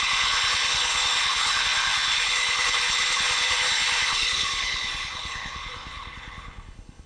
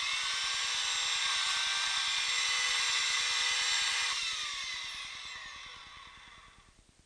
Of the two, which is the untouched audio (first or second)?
second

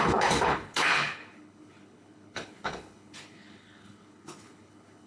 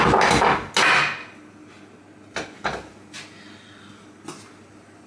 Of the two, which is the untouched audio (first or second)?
second